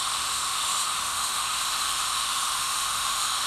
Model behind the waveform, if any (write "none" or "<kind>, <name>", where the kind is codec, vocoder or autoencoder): autoencoder, DAC-VAE